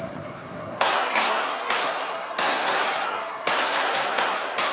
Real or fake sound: fake